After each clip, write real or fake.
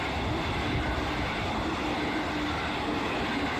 real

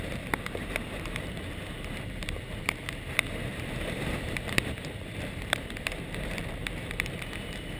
fake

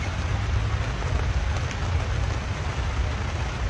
real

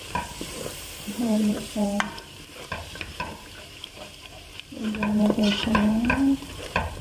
fake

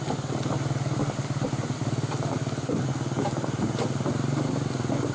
real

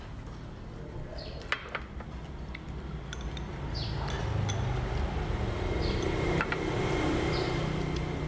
real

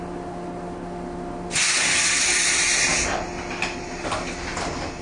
real